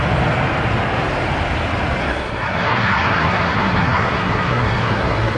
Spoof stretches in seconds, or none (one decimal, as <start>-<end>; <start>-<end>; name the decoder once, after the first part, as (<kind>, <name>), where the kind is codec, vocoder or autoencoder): 2.0-5.4 (codec, SNAC)